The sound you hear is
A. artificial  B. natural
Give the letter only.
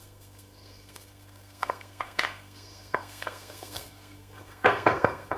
A